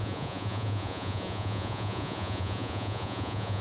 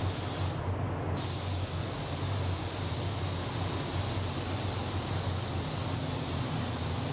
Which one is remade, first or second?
first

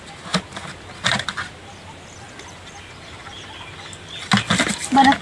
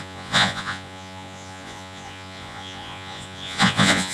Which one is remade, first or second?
second